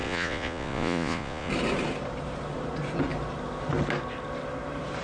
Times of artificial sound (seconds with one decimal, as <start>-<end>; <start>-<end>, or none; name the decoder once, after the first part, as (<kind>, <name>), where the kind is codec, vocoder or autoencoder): 0.0-1.5 (vocoder, Vocos)